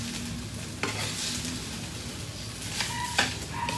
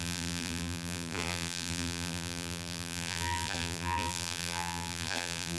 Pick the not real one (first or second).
second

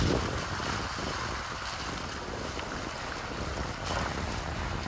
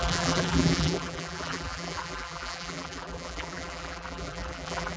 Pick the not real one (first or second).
second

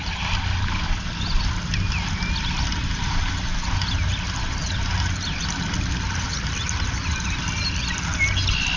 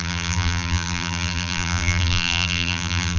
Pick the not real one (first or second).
second